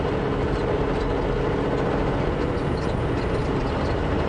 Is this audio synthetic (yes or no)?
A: no